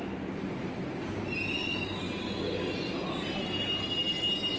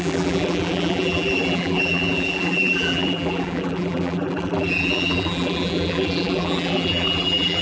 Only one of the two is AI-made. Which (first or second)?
second